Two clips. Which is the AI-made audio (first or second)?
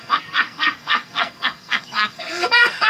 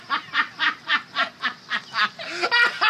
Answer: first